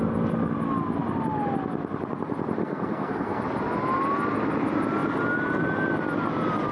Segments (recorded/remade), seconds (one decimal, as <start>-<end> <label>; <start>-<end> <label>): 0.0-2.6 recorded; 2.6-3.4 remade; 3.4-6.7 recorded